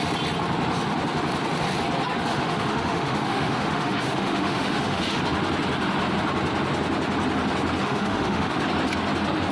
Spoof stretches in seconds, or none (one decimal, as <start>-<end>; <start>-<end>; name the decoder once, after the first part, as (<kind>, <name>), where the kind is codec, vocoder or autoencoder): 2.3-5.2 (autoencoder, DAC-VAE); 7.8-8.5